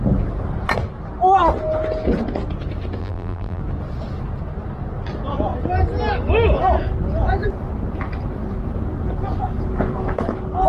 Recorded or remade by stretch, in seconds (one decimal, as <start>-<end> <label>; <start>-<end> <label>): 0.0-3.0 recorded; 3.0-3.6 remade; 3.6-10.7 recorded

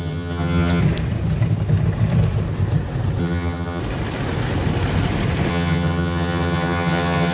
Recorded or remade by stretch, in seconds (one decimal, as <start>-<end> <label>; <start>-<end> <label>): 0.0-0.8 remade; 0.8-3.2 recorded; 3.2-3.8 remade; 3.8-5.5 recorded; 5.5-7.3 remade

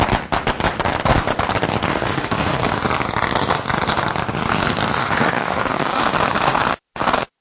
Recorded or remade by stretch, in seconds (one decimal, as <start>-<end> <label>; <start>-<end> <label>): 0.0-1.9 recorded; 1.9-2.6 remade; 2.6-5.0 recorded; 5.0-6.0 remade; 6.0-7.4 recorded

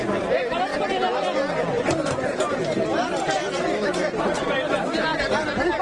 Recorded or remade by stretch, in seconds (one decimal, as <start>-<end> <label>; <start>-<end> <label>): 0.0-5.8 recorded